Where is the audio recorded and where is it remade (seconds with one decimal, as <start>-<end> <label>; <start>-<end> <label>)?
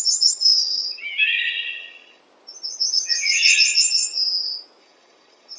0.0-2.2 remade; 2.2-2.9 recorded; 2.9-4.0 remade; 4.0-4.8 recorded; 4.8-5.6 remade